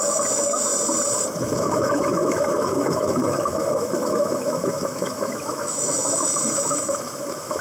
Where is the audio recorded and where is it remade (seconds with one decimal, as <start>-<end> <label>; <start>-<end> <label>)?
0.0-0.7 remade; 0.7-1.4 recorded; 1.4-7.6 remade